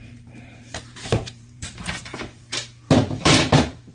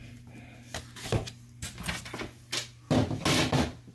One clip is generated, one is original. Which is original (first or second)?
second